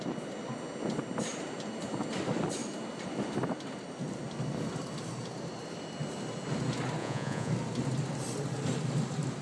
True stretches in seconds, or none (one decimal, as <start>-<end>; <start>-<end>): 0.0-7.0; 7.5-9.4